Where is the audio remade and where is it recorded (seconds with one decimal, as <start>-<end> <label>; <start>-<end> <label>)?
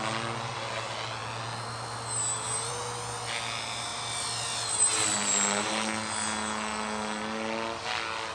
0.0-8.3 recorded